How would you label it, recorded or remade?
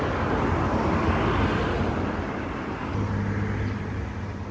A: recorded